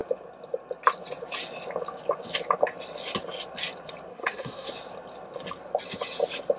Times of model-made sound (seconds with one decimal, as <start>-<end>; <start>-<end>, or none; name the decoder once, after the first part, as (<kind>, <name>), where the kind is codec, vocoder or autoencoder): 4.1-4.7 (codec, SNAC)